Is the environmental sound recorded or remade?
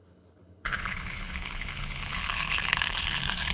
remade